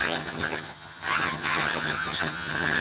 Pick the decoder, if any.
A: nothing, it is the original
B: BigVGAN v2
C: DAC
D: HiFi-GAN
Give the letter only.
D